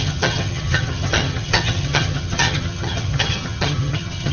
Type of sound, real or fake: fake